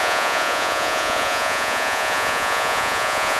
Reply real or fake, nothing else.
fake